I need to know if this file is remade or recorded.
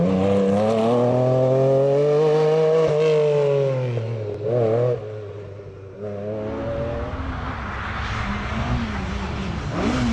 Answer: recorded